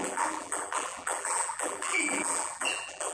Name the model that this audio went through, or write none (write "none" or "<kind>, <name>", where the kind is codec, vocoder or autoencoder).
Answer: vocoder, BigVGAN v2